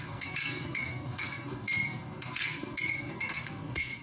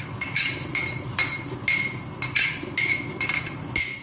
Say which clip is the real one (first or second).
second